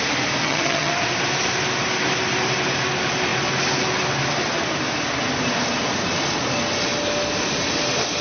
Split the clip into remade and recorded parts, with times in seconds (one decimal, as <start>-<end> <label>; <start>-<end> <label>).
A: 0.0-0.4 recorded; 0.4-0.9 remade; 0.9-8.2 recorded